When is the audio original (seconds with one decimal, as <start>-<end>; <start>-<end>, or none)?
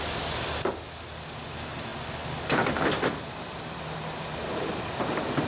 0.0-5.5